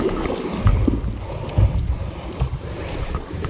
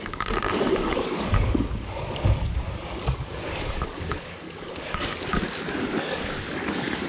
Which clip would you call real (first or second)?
first